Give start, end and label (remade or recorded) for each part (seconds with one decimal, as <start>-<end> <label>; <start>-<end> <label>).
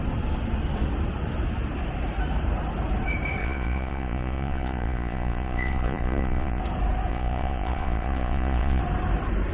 0.0-3.4 recorded; 3.4-6.6 remade; 6.6-7.1 recorded; 7.1-8.8 remade; 8.8-9.5 recorded